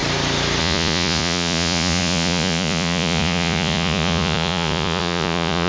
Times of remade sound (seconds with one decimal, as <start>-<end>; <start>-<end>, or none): 0.6-5.7